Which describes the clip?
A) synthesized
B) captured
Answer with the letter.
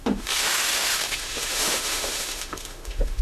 A